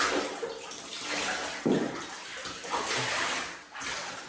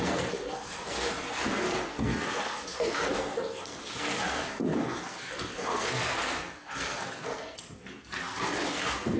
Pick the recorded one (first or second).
first